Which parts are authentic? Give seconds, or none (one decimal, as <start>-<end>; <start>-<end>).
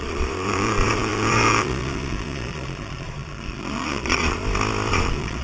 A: 4.4-4.9